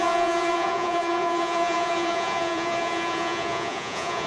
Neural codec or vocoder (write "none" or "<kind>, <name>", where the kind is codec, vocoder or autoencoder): vocoder, Vocos